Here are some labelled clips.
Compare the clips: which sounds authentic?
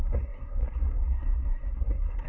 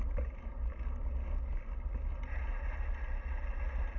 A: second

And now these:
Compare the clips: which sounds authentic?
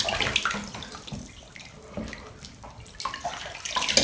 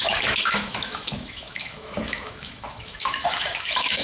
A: first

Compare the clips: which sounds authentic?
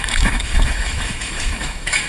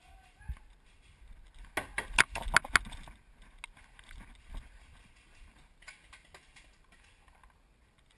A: second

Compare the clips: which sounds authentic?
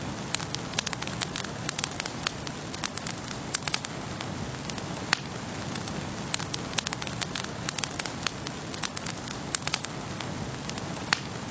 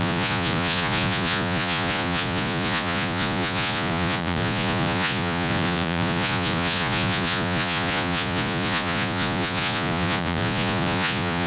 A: first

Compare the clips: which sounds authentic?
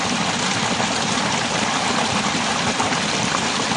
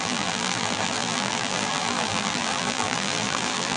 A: first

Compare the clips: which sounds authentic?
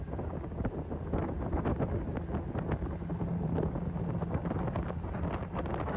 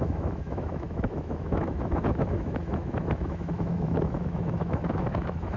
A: first